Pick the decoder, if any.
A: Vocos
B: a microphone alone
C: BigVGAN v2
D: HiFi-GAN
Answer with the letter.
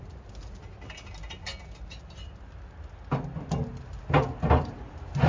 B